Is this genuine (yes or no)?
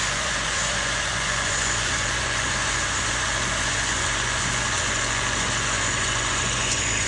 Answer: no